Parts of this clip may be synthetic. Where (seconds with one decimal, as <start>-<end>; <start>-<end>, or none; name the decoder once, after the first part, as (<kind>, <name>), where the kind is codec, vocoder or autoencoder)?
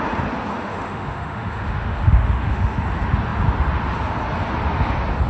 0.5-2.8 (autoencoder, DAC-VAE)